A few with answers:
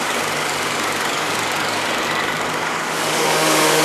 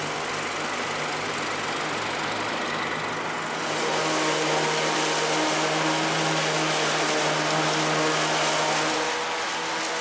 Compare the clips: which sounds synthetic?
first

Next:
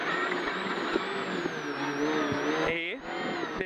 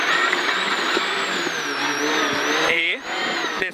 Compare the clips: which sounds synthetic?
second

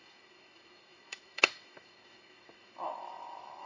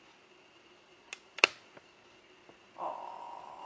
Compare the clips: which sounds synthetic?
first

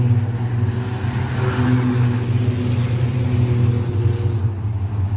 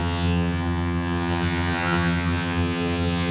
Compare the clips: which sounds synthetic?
second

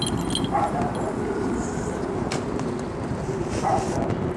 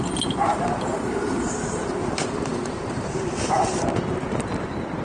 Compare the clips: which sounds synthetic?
second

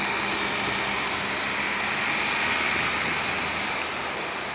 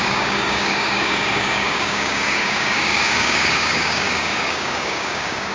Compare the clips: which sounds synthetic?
second